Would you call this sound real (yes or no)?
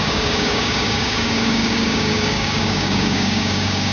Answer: no